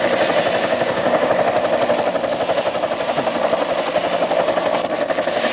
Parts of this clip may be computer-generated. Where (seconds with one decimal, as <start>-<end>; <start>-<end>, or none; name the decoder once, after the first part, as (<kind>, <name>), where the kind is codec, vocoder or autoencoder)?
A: 0.6-1.3 (codec, DAC)